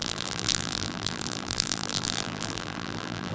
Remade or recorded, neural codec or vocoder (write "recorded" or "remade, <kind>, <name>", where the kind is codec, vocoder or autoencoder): remade, vocoder, BigVGAN v2